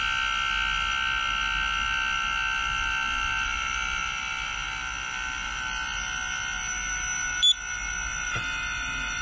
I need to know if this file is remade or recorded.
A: recorded